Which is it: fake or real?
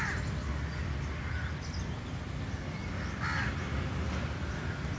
real